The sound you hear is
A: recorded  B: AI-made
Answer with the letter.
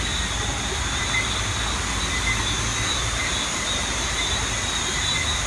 A